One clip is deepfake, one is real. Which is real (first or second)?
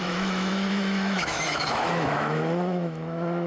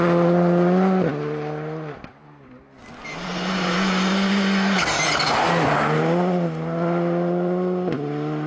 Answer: second